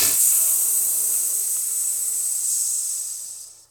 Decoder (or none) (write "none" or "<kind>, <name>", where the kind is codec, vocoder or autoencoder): none